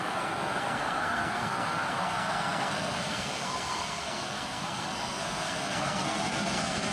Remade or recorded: remade